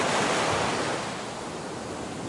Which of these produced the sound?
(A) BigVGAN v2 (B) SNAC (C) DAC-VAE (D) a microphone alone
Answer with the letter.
D